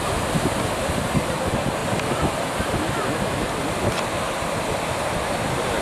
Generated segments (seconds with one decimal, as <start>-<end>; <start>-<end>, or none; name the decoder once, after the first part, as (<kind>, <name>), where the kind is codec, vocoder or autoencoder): none